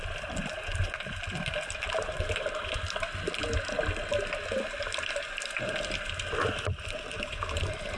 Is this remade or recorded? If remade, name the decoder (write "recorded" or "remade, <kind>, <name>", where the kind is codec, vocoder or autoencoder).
recorded